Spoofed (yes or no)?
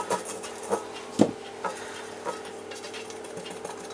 no